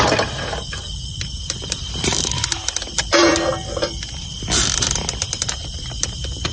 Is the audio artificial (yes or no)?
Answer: yes